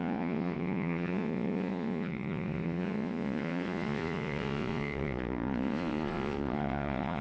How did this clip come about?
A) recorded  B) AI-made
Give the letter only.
B